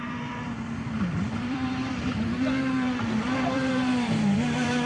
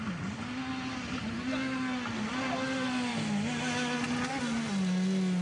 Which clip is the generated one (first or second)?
first